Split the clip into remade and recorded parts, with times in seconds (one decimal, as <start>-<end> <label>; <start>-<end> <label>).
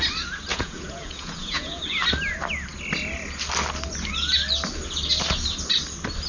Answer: 0.0-0.5 recorded; 0.5-1.8 remade; 1.8-6.3 recorded